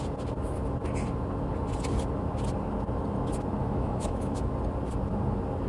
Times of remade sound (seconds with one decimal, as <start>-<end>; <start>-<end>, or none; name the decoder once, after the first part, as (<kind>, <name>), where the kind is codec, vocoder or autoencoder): 3.6-4.5 (autoencoder, DAC-VAE)